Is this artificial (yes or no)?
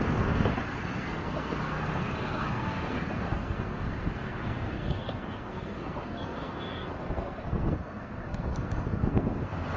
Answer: yes